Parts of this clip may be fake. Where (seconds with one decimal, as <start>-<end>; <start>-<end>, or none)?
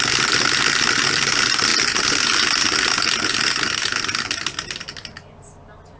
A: none